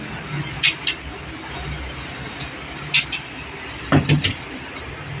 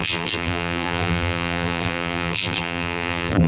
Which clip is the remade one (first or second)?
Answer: second